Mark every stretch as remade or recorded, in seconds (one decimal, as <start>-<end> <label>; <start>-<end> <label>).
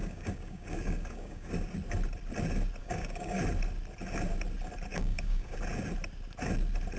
0.0-1.5 remade; 1.5-2.8 recorded; 2.8-3.4 remade; 3.4-4.9 recorded; 4.9-5.6 remade; 5.6-7.0 recorded